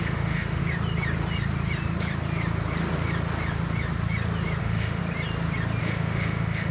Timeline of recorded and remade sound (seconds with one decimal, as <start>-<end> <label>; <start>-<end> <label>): 0.0-0.6 remade; 0.6-4.6 recorded; 4.6-5.0 remade; 5.0-5.8 recorded; 5.8-6.7 remade